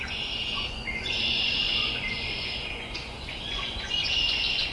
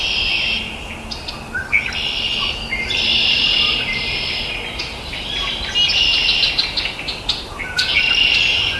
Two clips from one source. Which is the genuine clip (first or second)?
second